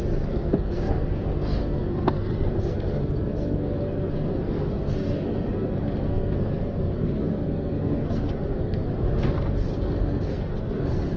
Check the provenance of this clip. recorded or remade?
remade